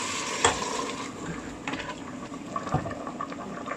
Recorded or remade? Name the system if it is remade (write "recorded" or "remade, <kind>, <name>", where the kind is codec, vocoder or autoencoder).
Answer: recorded